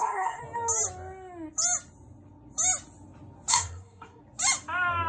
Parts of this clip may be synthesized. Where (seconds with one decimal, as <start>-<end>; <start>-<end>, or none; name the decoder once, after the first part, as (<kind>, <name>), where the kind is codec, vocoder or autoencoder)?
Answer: 0.0-0.4 (codec, SNAC); 3.5-4.2